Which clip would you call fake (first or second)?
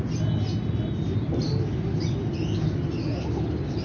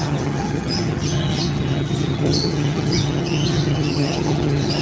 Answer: second